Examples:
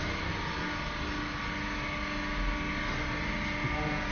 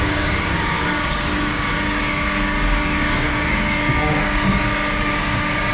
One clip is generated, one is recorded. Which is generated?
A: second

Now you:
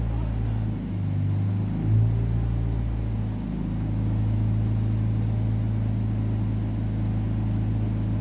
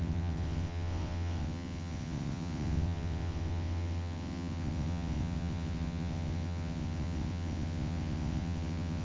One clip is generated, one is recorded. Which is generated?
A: second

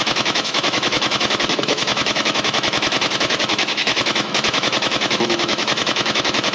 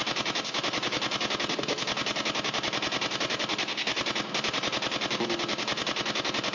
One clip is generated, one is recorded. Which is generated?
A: first